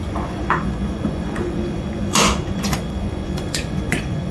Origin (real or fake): fake